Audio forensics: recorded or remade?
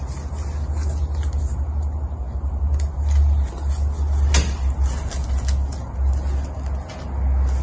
recorded